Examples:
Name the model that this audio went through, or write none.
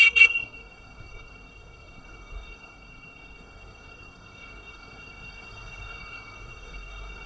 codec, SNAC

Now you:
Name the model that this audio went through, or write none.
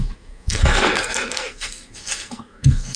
codec, SNAC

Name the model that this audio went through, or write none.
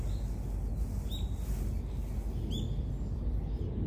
none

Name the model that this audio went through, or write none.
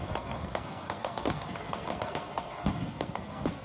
codec, SNAC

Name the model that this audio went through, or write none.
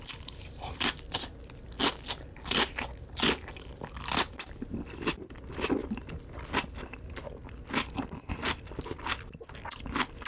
none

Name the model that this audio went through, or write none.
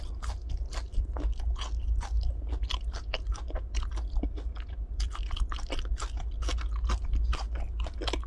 none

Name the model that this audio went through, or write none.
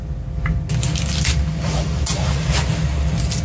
none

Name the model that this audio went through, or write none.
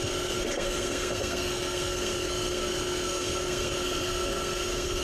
codec, SNAC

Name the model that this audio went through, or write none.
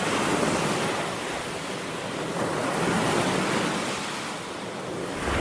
none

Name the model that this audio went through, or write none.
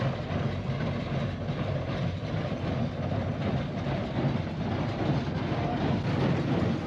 none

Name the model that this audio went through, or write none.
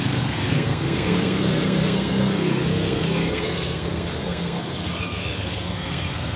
codec, SNAC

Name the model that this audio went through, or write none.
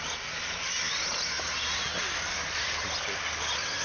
none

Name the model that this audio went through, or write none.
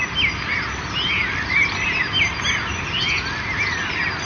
none